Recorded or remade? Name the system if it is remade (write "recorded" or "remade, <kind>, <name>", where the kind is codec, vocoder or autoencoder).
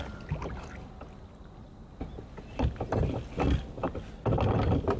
recorded